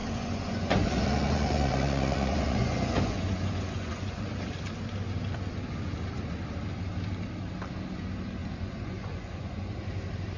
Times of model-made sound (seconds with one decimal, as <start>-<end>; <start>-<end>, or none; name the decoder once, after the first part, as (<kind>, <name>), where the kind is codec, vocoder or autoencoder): 0.0-4.3 (vocoder, Vocos); 8.4-9.7